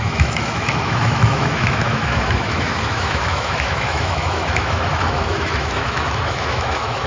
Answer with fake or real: fake